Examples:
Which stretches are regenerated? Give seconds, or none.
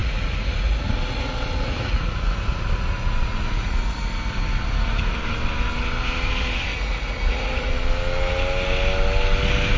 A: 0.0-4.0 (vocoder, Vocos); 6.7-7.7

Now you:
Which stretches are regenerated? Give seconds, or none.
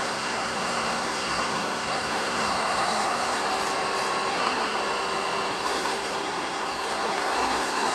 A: 0.0-3.4 (codec, SNAC); 4.3-4.8; 5.5-7.9